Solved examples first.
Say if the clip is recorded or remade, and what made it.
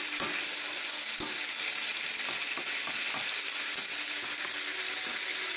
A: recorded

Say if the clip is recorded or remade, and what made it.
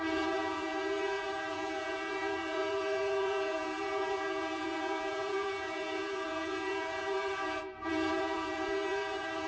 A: remade, vocoder, Vocos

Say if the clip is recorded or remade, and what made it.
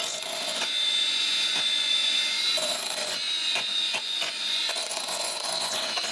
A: remade, vocoder, Vocos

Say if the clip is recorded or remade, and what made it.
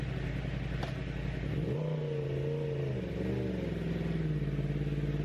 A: recorded